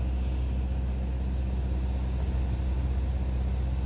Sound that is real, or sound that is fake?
real